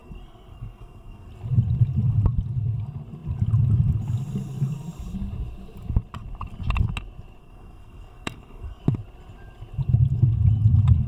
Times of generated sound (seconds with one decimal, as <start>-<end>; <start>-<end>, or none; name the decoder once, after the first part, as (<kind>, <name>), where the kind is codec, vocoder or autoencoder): 0.0-1.3 (codec, SNAC); 7.4-8.8